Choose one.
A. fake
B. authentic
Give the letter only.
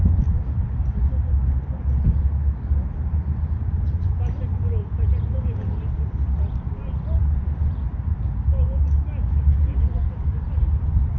B